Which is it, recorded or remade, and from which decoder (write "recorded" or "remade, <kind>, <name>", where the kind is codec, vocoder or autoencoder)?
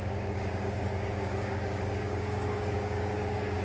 remade, codec, DAC